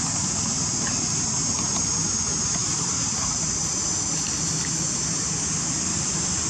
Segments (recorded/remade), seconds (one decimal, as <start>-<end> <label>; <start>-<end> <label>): 0.0-2.6 recorded; 2.6-3.5 remade; 3.5-5.9 recorded; 5.9-6.5 remade